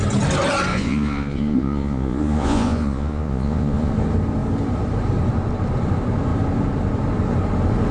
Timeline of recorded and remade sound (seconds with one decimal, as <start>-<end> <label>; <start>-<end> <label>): 0.0-0.7 recorded; 0.7-3.9 remade; 3.9-7.9 recorded

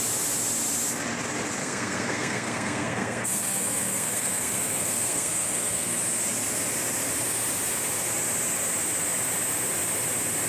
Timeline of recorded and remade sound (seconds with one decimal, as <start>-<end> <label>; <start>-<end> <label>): 0.0-1.6 recorded; 1.6-6.0 remade; 6.0-10.5 recorded